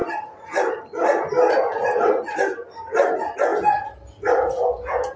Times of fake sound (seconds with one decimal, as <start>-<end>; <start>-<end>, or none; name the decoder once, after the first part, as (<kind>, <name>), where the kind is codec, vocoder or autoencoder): none